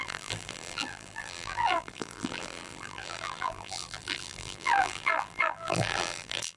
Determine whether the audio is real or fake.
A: fake